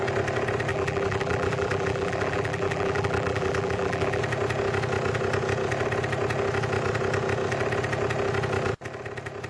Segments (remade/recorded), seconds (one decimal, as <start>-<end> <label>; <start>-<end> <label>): 0.0-0.7 recorded; 0.7-4.2 remade; 4.2-9.5 recorded

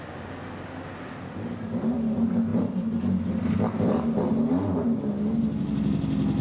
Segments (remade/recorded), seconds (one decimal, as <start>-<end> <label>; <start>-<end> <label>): 0.0-6.4 recorded

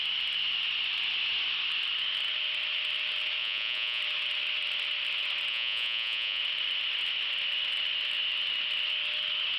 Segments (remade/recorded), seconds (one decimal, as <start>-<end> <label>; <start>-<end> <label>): 0.0-3.4 recorded; 3.4-4.0 remade; 4.0-5.5 recorded; 5.5-6.4 remade; 6.4-9.6 recorded

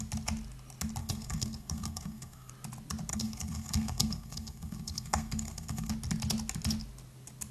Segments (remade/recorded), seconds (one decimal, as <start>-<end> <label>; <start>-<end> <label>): 0.0-1.0 recorded; 1.0-2.5 remade; 2.5-3.1 recorded; 3.1-5.9 remade; 5.9-7.5 recorded

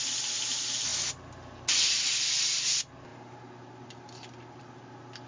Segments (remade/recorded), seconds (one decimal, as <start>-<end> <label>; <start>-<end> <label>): 0.0-5.3 recorded